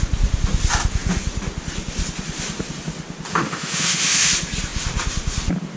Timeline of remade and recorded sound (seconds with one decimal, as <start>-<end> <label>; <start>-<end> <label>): 0.0-3.3 recorded; 3.3-4.3 remade; 4.3-5.8 recorded